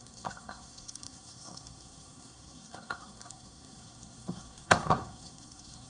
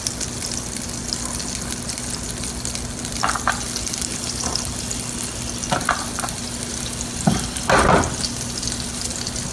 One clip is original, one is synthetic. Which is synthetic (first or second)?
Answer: first